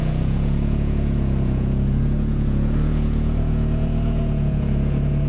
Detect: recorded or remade remade